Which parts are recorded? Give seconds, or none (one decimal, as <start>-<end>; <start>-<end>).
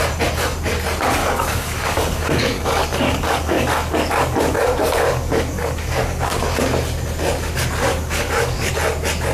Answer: 0.0-1.2; 6.4-7.9; 8.7-9.3